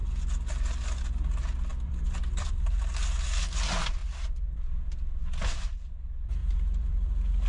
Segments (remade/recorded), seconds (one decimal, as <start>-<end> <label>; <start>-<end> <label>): 0.0-1.7 recorded; 1.7-2.8 remade; 2.8-6.4 recorded; 6.4-7.5 remade